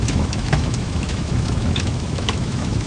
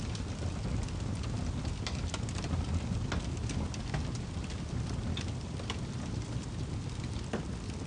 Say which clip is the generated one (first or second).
first